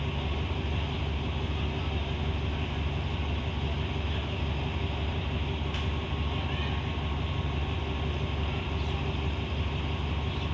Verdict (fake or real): real